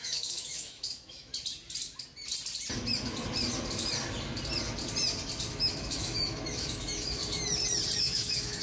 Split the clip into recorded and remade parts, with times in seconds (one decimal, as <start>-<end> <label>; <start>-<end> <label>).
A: 0.0-1.3 remade; 1.3-5.5 recorded; 5.5-7.2 remade; 7.2-8.0 recorded; 8.0-8.6 remade